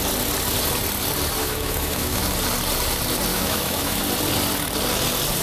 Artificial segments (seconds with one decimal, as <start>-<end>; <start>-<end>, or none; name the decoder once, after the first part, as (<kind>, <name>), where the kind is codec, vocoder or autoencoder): 1.4-2.2 (autoencoder, DAC-VAE); 3.3-4.0